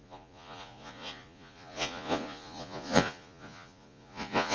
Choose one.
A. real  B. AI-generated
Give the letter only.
B